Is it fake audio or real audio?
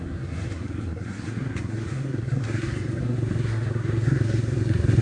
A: fake